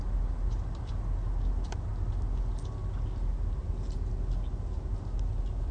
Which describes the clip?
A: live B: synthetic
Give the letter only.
A